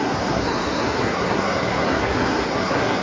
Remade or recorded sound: remade